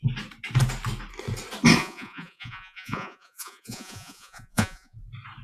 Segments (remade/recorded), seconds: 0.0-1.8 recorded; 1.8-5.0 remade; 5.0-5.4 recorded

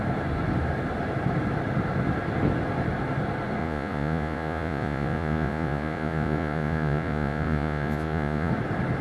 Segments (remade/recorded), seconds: 0.0-3.6 recorded; 3.6-8.5 remade; 8.5-9.0 recorded

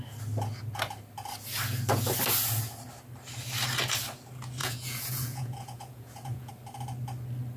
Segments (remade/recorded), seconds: 0.0-4.6 recorded; 4.6-6.5 remade; 6.5-7.6 recorded

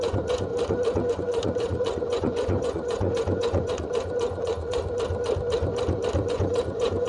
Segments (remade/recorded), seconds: 0.0-0.5 remade; 0.5-1.1 recorded; 1.1-4.8 remade; 4.8-6.3 recorded; 6.3-7.1 remade